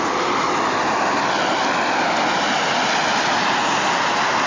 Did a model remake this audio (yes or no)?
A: no